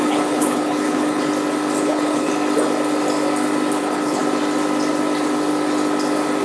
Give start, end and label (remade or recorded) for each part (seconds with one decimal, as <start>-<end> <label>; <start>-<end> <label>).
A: 0.0-1.3 remade; 1.3-1.8 recorded; 1.8-2.3 remade; 2.3-3.8 recorded; 3.8-4.2 remade; 4.2-6.4 recorded